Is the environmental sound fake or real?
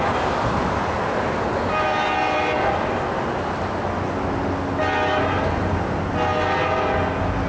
real